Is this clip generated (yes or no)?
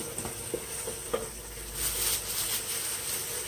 no